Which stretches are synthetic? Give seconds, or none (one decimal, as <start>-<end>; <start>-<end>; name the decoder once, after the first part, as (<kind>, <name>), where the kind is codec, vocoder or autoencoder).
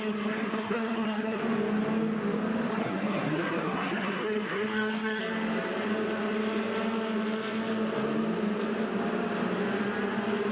0.0-1.4 (codec, SNAC); 2.7-5.2